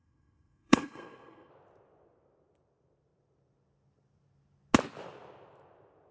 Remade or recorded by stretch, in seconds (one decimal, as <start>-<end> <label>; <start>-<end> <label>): 0.0-1.5 remade; 1.5-6.1 recorded